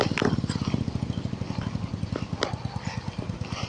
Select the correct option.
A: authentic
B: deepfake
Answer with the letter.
A